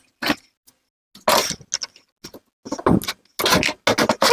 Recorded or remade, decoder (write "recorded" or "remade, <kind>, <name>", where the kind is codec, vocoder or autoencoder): recorded